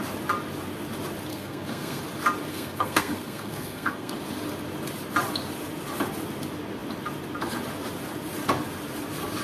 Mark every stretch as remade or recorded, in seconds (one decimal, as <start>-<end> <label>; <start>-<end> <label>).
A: 0.0-1.3 recorded; 1.3-2.0 remade; 2.0-2.5 recorded; 2.5-4.1 remade; 4.1-9.4 recorded